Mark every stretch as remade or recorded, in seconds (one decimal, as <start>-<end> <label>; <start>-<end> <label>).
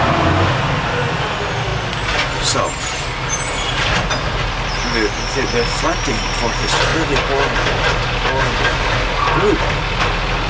0.0-10.5 recorded